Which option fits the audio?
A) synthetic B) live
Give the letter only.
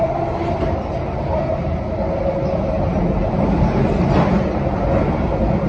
B